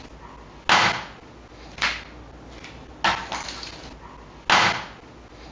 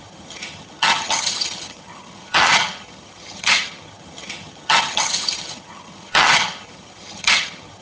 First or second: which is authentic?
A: first